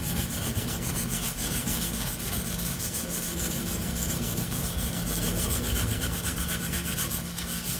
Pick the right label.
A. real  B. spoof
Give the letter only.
B